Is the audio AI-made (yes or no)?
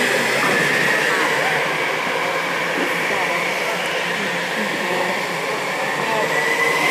no